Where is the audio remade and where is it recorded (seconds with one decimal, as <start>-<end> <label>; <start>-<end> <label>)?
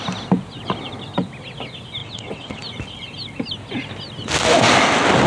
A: 0.0-2.0 recorded; 2.0-2.6 remade; 2.6-5.3 recorded